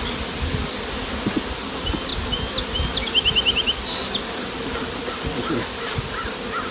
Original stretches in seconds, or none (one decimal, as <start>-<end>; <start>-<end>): 0.0-6.7